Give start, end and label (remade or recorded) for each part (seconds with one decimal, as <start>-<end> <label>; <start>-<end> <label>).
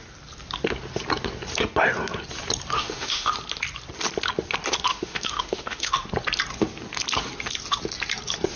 0.0-2.8 recorded; 2.8-3.3 remade; 3.3-4.9 recorded; 4.9-5.9 remade; 5.9-8.6 recorded